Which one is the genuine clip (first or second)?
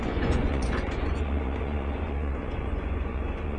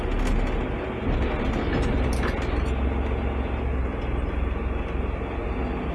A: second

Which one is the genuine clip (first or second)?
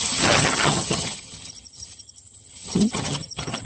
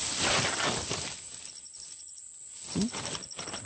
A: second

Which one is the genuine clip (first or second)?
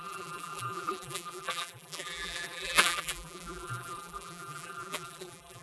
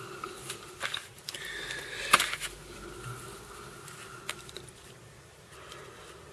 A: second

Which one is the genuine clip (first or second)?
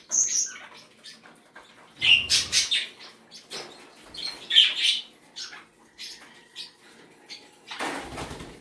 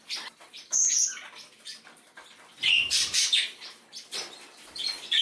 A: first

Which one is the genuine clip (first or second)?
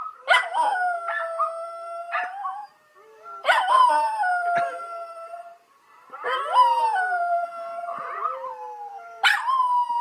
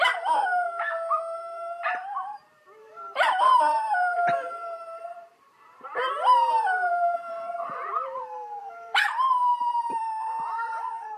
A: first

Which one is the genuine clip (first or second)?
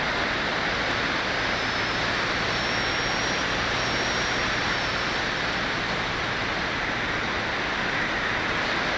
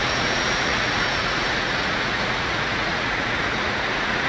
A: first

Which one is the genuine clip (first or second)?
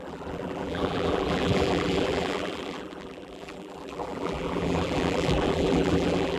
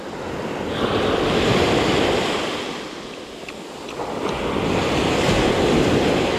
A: second